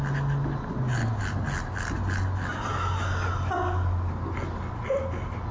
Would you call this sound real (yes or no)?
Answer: yes